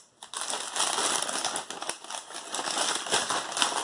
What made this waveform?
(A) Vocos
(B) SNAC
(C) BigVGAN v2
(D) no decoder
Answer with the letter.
D